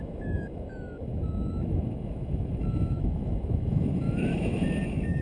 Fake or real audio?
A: fake